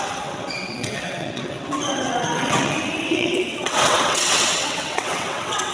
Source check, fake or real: fake